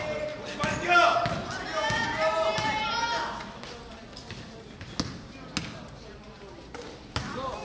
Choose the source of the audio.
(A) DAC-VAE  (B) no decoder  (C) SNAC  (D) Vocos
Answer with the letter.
B